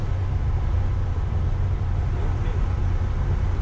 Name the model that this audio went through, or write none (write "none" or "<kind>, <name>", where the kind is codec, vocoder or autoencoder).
none